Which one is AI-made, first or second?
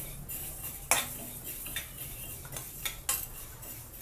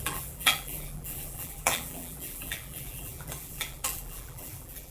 second